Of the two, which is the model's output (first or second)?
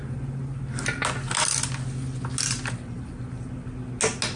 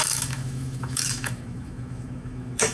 second